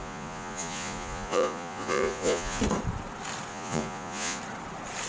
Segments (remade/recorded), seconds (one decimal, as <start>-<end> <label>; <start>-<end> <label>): 0.0-2.6 remade; 2.6-3.5 recorded; 3.5-4.4 remade; 4.4-5.1 recorded